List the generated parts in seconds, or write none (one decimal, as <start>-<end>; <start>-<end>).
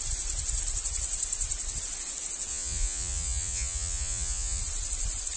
2.5-4.6